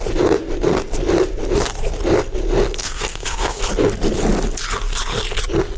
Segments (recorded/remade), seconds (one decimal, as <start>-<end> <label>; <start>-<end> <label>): 0.0-2.8 recorded; 2.8-3.6 remade; 3.6-5.8 recorded